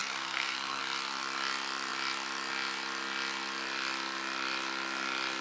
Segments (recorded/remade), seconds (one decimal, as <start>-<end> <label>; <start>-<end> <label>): 0.0-0.8 remade; 0.8-5.4 recorded